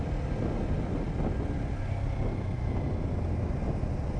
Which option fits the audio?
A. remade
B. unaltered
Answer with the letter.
B